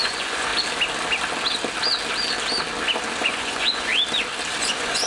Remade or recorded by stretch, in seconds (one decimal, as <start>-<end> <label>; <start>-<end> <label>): 0.0-0.5 remade; 0.5-3.2 recorded; 3.2-3.9 remade; 3.9-4.6 recorded; 4.6-5.1 remade